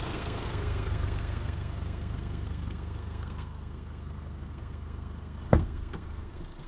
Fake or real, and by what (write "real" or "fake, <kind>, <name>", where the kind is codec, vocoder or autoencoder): fake, codec, SNAC